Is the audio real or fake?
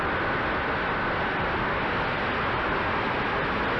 real